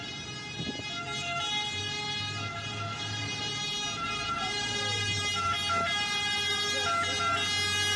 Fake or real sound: real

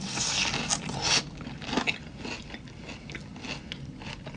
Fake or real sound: real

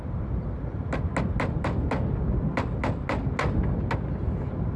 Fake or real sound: real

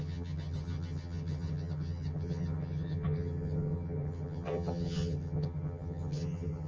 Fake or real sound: fake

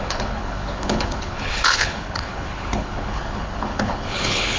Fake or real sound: fake